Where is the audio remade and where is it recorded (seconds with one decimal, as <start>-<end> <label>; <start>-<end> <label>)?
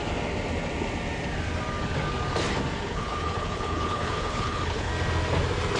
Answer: 0.0-2.9 recorded; 2.9-4.9 remade; 4.9-5.8 recorded